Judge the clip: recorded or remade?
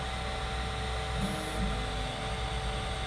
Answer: recorded